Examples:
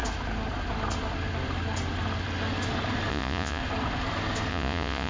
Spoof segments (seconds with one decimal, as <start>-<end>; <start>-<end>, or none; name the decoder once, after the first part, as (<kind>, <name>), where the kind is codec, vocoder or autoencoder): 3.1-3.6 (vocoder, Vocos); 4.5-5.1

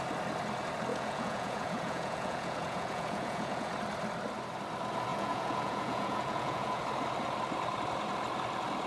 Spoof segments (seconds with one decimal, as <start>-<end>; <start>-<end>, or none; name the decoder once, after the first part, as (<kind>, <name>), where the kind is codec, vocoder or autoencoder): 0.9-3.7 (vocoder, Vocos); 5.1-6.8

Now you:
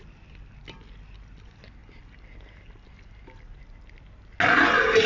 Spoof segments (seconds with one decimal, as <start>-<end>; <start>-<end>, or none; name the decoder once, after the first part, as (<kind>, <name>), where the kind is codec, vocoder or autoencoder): none